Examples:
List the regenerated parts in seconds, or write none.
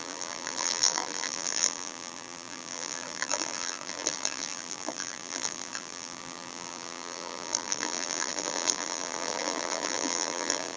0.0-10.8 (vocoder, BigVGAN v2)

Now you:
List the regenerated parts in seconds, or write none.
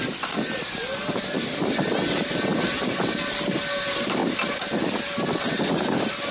0.0-2.5 (vocoder, BigVGAN v2); 3.3-4.2; 5.5-6.3